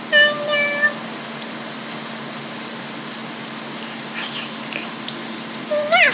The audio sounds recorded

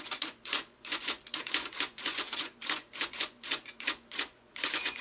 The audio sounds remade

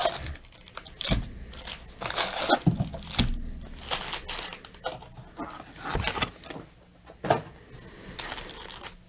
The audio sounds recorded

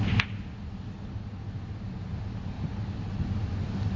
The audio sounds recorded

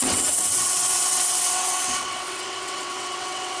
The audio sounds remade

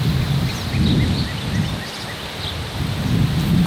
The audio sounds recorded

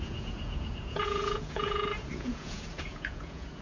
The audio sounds remade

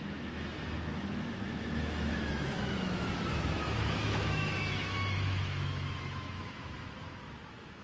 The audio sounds remade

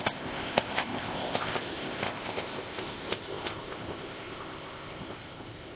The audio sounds remade